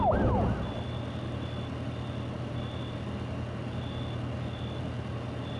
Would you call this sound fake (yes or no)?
no